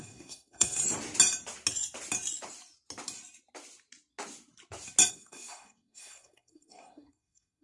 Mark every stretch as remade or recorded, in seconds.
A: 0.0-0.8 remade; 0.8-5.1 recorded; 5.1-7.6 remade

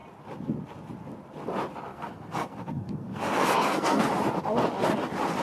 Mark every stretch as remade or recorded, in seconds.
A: 0.0-1.9 recorded; 1.9-4.1 remade; 4.1-5.4 recorded

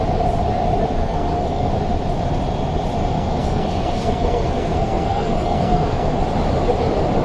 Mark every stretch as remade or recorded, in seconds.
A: 0.0-1.0 recorded; 1.0-1.7 remade; 1.7-3.0 recorded; 3.0-6.2 remade; 6.2-7.2 recorded

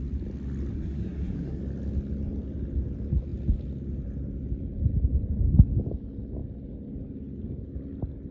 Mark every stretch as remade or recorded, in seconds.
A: 0.0-0.7 recorded; 0.7-1.6 remade; 1.6-8.3 recorded